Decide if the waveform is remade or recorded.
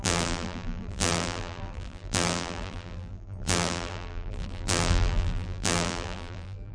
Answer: remade